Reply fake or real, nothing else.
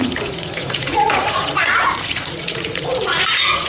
fake